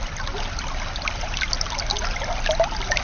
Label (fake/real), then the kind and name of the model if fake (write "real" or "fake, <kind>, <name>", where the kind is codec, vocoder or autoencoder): real